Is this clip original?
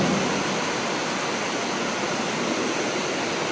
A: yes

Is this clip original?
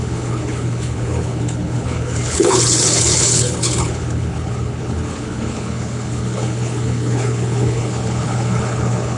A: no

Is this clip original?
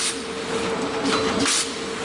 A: yes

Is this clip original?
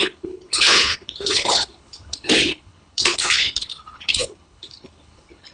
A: no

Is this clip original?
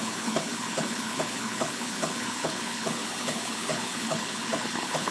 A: no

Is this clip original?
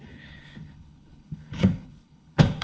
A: no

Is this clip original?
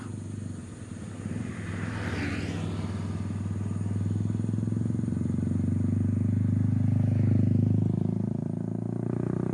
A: yes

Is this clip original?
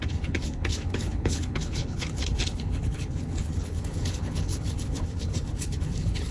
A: no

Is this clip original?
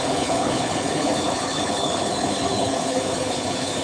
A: no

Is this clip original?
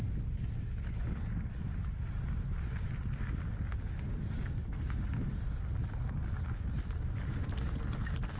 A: yes